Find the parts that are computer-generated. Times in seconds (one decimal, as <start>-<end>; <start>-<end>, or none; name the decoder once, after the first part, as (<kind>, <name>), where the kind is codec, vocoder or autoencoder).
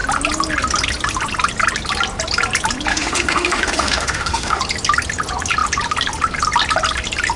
2.9-4.6 (autoencoder, DAC-VAE)